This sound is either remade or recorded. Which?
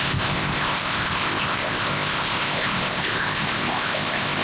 remade